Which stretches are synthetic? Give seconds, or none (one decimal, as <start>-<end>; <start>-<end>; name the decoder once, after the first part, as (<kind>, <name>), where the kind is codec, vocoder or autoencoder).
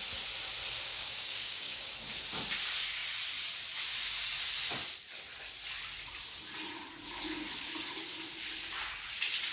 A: 0.9-1.9 (codec, DAC)